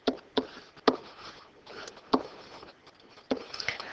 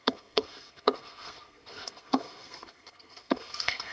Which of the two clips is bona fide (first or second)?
first